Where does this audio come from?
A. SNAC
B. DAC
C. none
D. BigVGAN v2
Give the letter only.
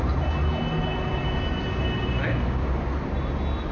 C